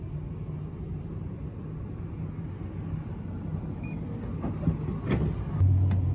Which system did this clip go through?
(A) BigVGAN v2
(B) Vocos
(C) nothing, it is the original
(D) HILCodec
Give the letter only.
C